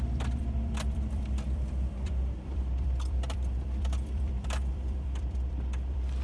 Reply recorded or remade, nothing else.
remade